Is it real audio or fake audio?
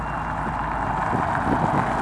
real